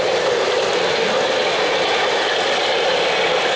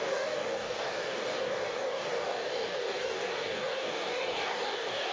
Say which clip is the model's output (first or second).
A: second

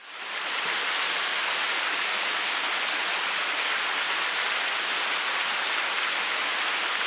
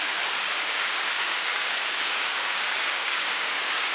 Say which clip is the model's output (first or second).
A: second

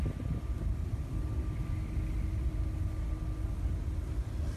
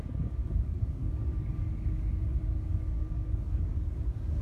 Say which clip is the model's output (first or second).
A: second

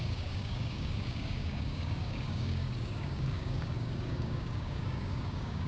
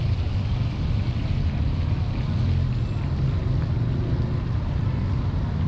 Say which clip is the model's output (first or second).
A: first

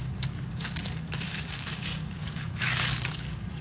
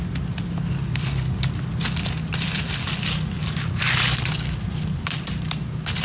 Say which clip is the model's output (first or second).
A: first